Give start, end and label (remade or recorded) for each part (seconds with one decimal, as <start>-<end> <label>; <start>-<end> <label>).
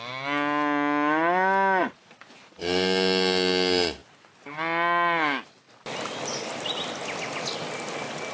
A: 0.0-1.8 recorded; 1.8-2.6 remade; 2.6-8.3 recorded